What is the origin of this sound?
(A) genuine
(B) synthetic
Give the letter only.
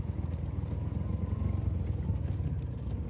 A